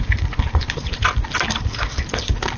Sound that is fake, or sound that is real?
real